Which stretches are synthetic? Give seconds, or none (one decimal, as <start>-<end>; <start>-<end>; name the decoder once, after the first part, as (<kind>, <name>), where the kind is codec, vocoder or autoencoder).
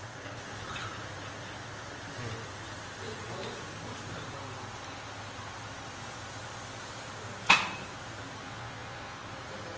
8.4-9.2 (vocoder, Vocos)